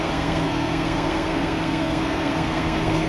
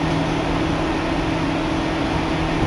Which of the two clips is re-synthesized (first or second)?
first